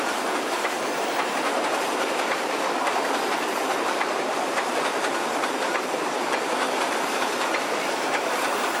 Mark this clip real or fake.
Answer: fake